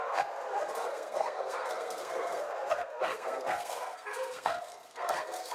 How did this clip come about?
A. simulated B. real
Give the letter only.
A